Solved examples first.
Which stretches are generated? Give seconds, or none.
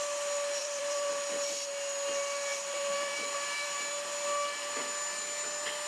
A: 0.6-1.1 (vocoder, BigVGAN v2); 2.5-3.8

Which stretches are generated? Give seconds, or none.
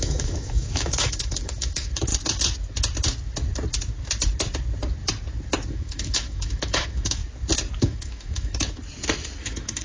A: 0.0-2.1 (autoencoder, DAC-VAE); 5.7-7.2; 7.8-8.8; 9.4-9.8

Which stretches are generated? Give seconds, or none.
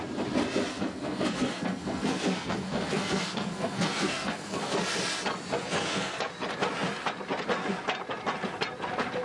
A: 0.7-4.8 (codec, SNAC); 5.6-6.3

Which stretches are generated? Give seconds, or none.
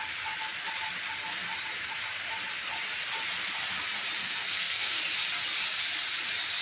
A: 4.2-5.0 (codec, SNAC)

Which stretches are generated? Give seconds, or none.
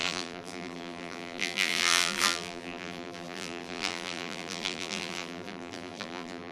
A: 0.0-6.5 (vocoder, BigVGAN v2)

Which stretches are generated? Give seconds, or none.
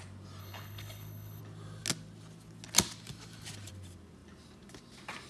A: 0.4-1.4 (codec, HILCodec)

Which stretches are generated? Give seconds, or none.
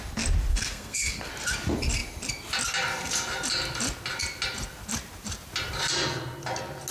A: 0.5-1.3 (codec, SNAC)